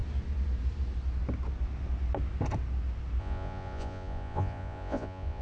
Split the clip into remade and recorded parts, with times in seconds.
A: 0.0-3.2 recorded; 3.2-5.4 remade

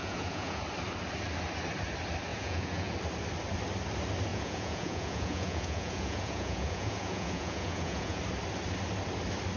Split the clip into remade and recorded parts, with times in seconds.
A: 0.0-0.6 remade; 0.6-2.3 recorded; 2.3-2.9 remade; 2.9-4.3 recorded; 4.3-8.2 remade; 8.2-9.6 recorded

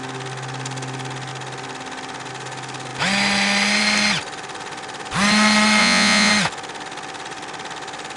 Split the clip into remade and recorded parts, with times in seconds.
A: 0.0-5.8 recorded; 5.8-6.3 remade; 6.3-8.2 recorded